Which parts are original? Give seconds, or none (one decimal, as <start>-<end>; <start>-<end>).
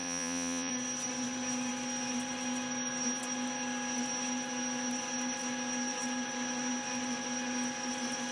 0.7-8.3